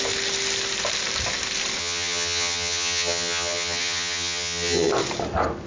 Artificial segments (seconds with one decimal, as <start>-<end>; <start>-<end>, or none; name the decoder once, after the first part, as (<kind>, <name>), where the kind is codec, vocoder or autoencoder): 1.8-4.9 (vocoder, HiFi-GAN)